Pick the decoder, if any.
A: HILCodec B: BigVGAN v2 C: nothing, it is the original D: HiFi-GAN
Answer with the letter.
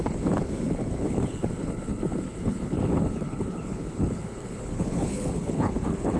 A